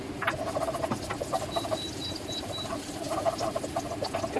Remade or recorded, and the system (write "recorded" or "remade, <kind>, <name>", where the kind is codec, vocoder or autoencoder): recorded